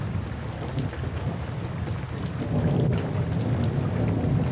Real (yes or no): yes